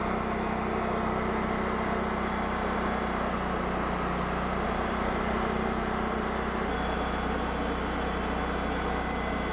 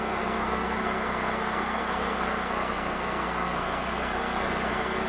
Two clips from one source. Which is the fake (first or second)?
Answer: second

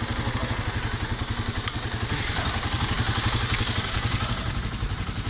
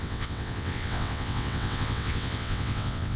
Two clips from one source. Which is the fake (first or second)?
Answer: second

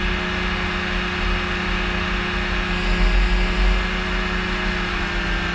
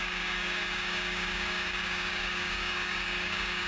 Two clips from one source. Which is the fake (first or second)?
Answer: second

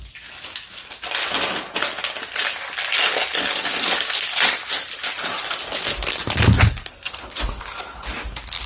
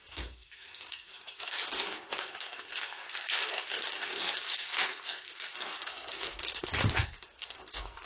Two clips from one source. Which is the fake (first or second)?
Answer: second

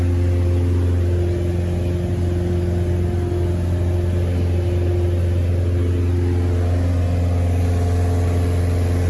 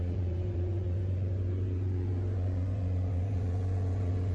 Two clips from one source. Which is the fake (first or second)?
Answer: second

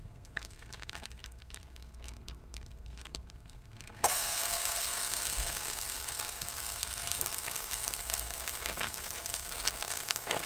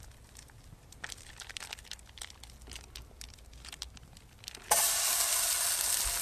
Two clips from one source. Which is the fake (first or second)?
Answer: first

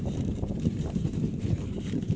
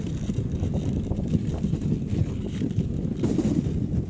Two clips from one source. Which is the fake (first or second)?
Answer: first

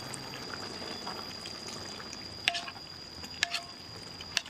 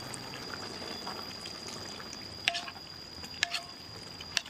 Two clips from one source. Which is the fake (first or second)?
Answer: second